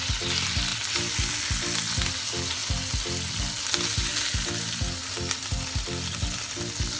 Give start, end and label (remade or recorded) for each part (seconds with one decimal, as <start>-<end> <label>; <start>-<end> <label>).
0.0-7.0 recorded